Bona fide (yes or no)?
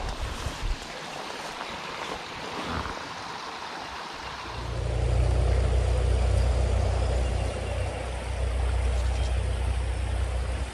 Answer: yes